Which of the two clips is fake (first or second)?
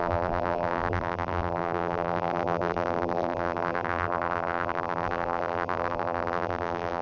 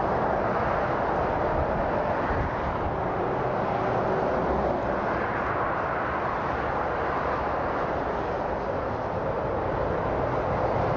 first